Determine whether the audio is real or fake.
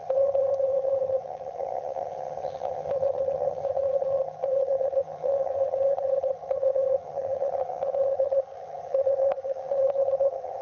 fake